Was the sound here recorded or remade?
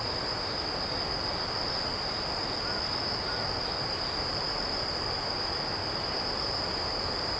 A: recorded